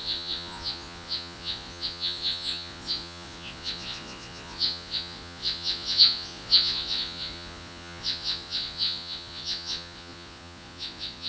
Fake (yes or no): yes